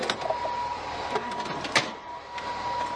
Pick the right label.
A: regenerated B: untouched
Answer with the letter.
B